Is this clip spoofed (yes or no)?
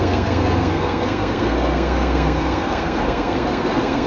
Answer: yes